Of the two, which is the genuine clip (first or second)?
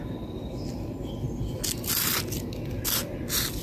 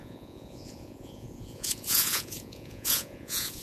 first